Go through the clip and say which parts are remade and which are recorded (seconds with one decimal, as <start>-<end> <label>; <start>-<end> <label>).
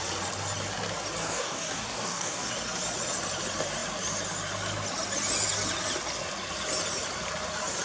0.0-1.2 recorded; 1.2-2.5 remade; 2.5-7.8 recorded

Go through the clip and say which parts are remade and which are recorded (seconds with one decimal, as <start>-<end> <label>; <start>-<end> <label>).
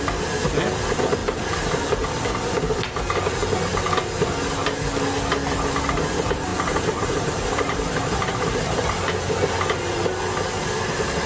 0.0-1.2 recorded; 1.2-2.3 remade; 2.3-6.5 recorded; 6.5-9.6 remade; 9.6-11.3 recorded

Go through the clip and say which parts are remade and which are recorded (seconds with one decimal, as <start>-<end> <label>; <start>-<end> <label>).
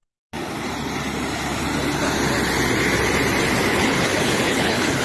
0.0-3.7 recorded; 3.7-5.0 remade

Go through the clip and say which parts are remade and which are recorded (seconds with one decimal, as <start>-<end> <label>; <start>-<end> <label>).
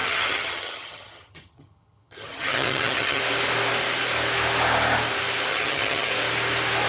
0.0-3.2 remade; 3.2-5.5 recorded; 5.5-6.1 remade; 6.1-6.9 recorded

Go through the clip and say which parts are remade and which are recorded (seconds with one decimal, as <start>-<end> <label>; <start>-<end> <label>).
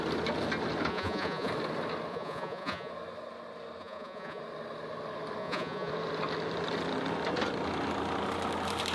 0.0-0.9 recorded; 0.9-1.5 remade; 1.5-2.1 recorded; 2.1-2.9 remade; 2.9-3.8 recorded; 3.8-4.4 remade; 4.4-5.4 recorded; 5.4-5.9 remade; 5.9-8.9 recorded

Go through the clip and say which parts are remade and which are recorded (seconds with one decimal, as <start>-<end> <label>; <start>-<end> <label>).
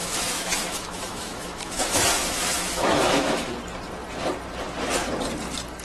0.0-3.5 remade; 3.5-5.8 recorded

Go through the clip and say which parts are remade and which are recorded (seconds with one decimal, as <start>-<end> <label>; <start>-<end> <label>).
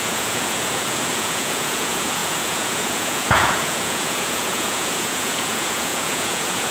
0.0-6.7 remade